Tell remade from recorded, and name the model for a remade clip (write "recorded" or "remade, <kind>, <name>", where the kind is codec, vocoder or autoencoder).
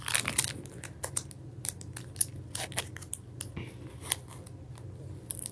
recorded